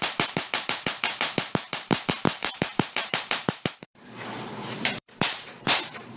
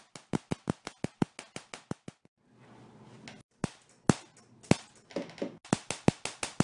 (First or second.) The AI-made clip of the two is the first